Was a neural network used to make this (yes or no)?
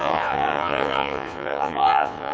yes